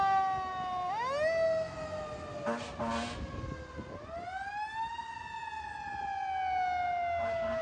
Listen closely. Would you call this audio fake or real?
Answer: real